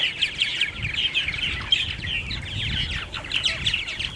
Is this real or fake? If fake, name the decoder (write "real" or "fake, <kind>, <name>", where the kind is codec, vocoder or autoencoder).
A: real